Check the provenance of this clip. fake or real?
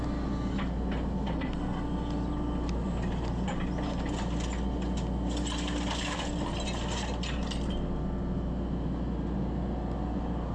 real